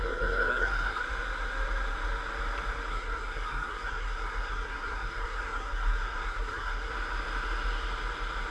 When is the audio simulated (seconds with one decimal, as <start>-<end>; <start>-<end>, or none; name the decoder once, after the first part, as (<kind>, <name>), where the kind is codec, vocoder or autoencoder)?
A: 0.0-1.0 (codec, SNAC); 2.9-6.9